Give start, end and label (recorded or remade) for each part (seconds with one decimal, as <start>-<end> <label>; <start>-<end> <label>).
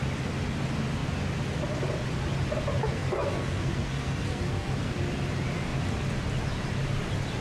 0.0-2.8 recorded; 2.8-4.9 remade; 4.9-7.4 recorded